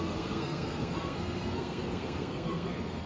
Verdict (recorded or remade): remade